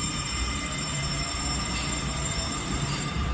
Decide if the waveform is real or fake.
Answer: fake